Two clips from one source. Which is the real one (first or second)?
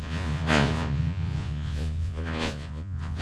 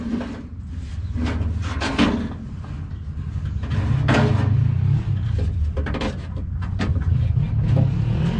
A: second